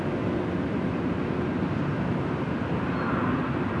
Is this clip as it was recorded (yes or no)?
yes